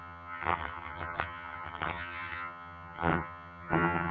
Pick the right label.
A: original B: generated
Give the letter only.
B